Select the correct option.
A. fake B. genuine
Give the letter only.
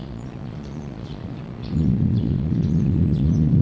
A